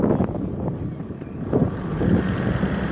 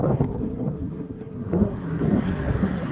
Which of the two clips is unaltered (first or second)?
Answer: first